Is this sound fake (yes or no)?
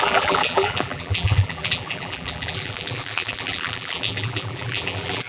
yes